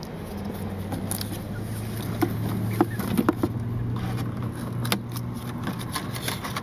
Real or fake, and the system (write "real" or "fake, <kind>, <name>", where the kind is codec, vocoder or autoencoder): real